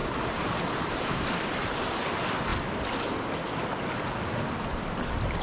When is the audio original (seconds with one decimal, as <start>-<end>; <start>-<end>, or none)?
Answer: 1.8-5.4